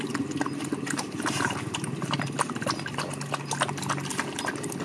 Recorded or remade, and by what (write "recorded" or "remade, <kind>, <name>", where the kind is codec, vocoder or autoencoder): recorded